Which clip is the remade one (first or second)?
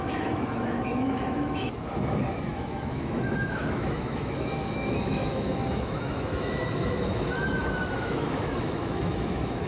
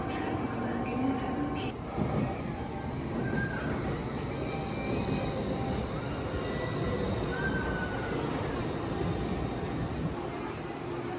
first